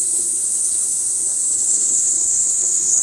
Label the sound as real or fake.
fake